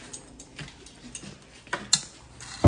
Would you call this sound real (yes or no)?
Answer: yes